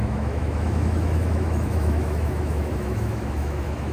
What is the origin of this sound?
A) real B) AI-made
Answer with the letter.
B